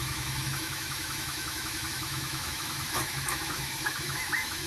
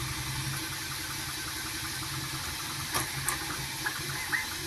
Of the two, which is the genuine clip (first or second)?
second